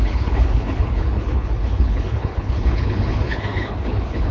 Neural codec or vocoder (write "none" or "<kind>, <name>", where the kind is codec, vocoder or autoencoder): codec, HILCodec